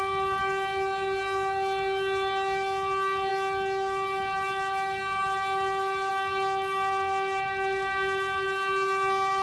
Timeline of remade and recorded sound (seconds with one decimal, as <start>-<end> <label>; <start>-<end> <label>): 0.0-9.4 recorded

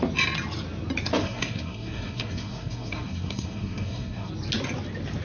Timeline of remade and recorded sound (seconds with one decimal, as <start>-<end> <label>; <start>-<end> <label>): 0.0-1.2 recorded; 1.2-4.3 remade; 4.3-5.2 recorded

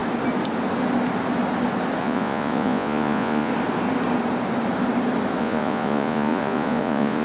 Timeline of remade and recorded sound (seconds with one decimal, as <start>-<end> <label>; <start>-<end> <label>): 0.0-2.0 recorded; 2.0-3.5 remade; 3.5-5.4 recorded; 5.4-7.2 remade